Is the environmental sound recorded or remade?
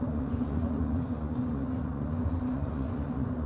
remade